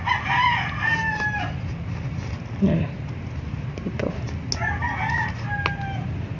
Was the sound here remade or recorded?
recorded